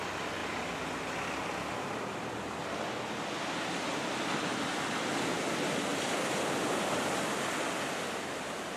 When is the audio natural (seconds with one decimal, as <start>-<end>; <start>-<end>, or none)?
0.0-5.9; 6.5-8.8